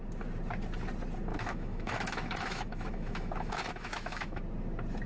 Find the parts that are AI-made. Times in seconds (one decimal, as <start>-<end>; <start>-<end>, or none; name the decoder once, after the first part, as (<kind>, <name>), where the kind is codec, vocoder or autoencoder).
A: 1.3-4.4 (autoencoder, DAC-VAE)